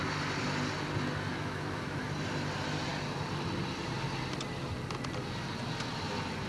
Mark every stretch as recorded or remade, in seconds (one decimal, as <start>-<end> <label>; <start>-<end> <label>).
0.0-1.3 recorded; 1.3-2.0 remade; 2.0-6.5 recorded